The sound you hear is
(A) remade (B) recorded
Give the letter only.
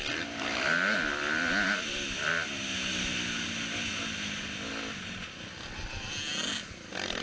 B